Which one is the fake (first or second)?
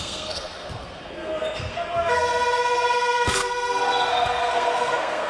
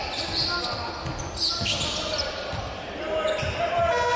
first